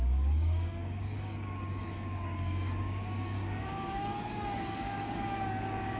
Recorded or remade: remade